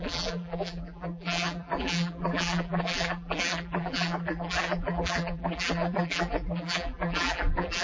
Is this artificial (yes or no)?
yes